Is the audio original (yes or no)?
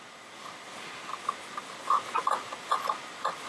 yes